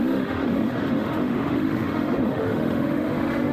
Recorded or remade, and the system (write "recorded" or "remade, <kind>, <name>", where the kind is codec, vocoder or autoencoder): remade, autoencoder, DAC-VAE